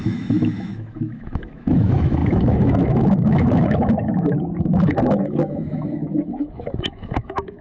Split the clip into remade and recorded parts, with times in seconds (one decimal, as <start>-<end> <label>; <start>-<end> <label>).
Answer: 0.0-7.6 remade